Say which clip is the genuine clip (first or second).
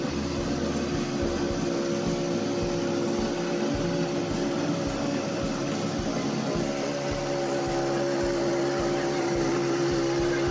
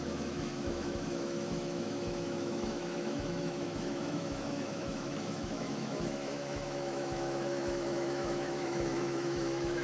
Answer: first